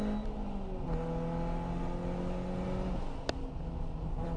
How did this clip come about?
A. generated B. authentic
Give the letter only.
B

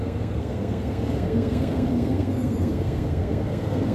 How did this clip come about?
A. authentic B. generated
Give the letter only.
B